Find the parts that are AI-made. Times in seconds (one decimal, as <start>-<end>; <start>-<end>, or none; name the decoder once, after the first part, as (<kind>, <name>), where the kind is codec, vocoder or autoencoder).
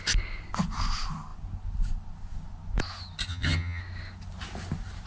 3.3-3.8 (vocoder, HiFi-GAN)